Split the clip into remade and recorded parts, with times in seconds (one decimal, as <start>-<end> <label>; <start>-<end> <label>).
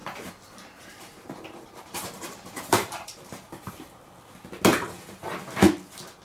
0.0-3.7 remade; 3.7-4.7 recorded; 4.7-5.3 remade; 5.3-6.2 recorded